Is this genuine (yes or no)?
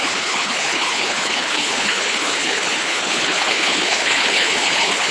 no